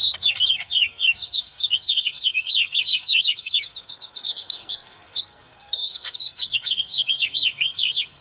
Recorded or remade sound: remade